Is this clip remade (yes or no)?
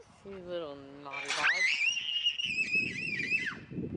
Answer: no